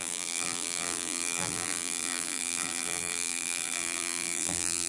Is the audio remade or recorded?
remade